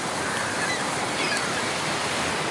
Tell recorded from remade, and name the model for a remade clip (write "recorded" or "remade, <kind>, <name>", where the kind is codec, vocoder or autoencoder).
recorded